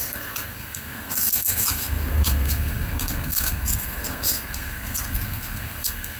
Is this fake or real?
fake